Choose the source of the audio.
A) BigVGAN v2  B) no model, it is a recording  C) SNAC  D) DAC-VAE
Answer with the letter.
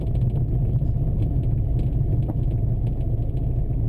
B